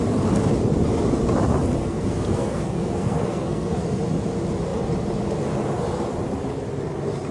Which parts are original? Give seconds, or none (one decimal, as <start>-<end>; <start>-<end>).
0.0-1.8; 4.0-7.3